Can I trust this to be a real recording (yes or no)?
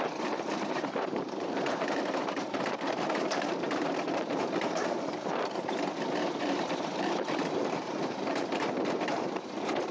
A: no